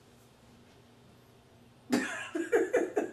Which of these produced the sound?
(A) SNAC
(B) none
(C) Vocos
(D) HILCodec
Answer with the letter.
B